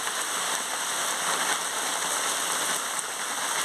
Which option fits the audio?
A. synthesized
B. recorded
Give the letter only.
B